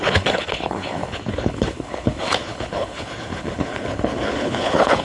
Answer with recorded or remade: remade